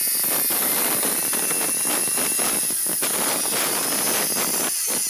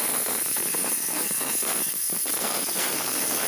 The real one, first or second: first